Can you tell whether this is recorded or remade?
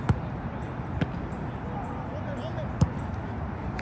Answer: remade